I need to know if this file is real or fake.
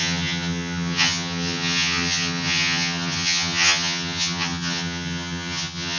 fake